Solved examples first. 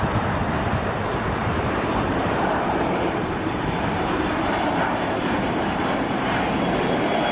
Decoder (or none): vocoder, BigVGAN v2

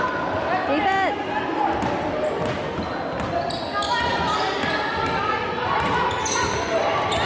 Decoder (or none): none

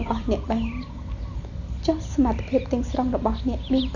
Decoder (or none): none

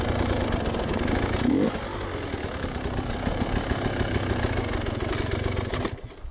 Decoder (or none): none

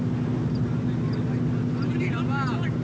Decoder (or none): none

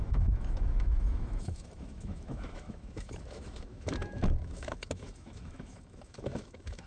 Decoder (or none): autoencoder, DAC-VAE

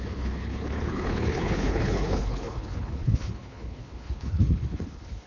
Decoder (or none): codec, HILCodec